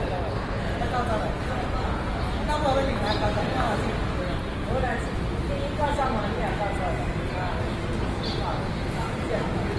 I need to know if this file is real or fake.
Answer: real